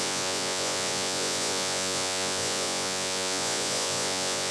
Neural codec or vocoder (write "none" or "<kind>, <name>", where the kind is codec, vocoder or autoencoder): vocoder, Vocos